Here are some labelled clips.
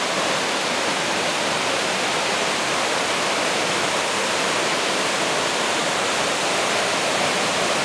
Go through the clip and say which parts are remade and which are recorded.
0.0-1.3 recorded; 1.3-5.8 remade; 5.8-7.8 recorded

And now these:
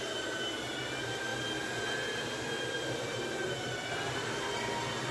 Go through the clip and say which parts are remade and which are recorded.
0.0-5.1 recorded

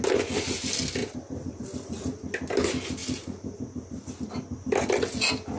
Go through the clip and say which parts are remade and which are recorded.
0.0-1.0 recorded; 1.0-1.6 remade; 1.6-3.0 recorded; 3.0-4.1 remade; 4.1-5.6 recorded

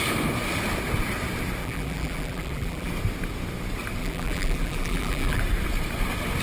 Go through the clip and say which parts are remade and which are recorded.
0.0-1.6 recorded; 1.6-2.9 remade; 2.9-4.0 recorded; 4.0-5.4 remade; 5.4-6.4 recorded

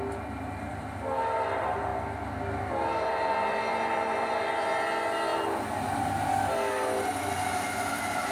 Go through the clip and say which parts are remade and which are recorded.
0.0-8.3 recorded

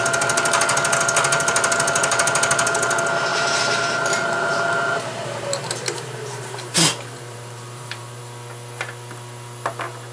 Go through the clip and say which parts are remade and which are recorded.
0.0-3.3 recorded; 3.3-8.2 remade; 8.2-10.1 recorded